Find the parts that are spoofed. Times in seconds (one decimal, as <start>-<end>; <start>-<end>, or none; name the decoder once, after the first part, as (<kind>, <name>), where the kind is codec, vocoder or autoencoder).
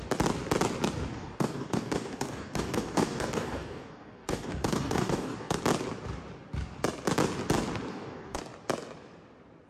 1.1-5.6 (codec, DAC); 7.9-8.4